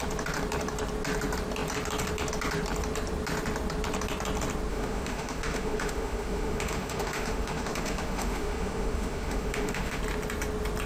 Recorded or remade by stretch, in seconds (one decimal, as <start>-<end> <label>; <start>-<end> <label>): 0.0-4.7 recorded; 4.7-10.0 remade; 10.0-10.9 recorded